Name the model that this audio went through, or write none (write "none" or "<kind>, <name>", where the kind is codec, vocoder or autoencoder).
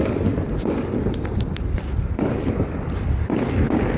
none